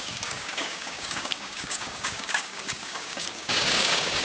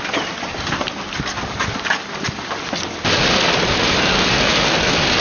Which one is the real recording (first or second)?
second